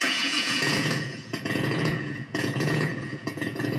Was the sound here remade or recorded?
remade